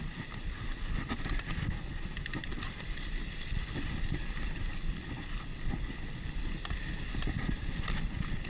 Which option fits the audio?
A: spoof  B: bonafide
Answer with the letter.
B